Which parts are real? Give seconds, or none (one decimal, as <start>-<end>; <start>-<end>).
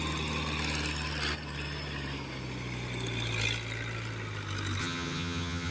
0.0-4.8